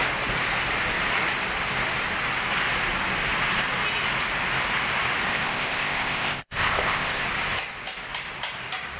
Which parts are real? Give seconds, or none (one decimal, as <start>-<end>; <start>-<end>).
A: 0.0-5.3; 7.2-9.0